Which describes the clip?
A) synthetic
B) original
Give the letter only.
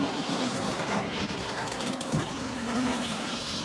A